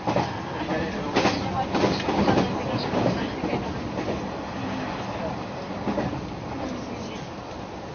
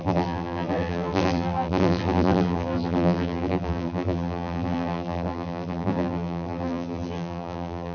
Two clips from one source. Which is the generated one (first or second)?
second